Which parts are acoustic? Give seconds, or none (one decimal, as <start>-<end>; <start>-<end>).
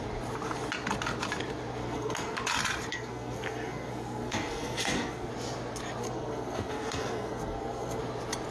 0.0-1.8; 2.4-2.9; 5.3-6.0; 8.0-8.5